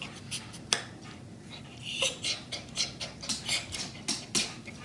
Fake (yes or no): no